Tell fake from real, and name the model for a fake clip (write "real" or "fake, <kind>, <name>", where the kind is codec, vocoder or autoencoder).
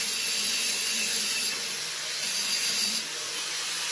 fake, vocoder, Vocos